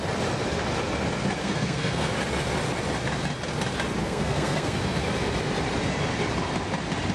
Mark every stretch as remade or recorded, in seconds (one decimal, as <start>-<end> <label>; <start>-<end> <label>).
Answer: 0.0-1.4 recorded; 1.4-2.1 remade; 2.1-4.0 recorded; 4.0-4.8 remade; 4.8-7.1 recorded